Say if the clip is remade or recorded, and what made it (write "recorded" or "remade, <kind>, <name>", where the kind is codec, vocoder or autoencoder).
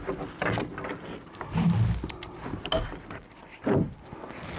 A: recorded